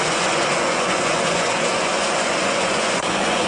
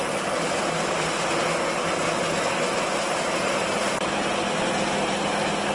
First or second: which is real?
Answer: second